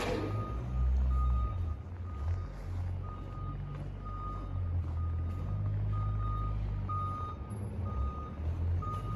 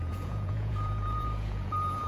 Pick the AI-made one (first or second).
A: second